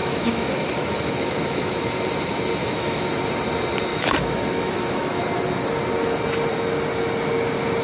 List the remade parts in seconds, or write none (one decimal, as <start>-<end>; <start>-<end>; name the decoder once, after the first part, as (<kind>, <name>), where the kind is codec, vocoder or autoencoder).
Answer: 0.0-1.9 (autoencoder, DAC-VAE); 2.6-3.1; 3.9-5.2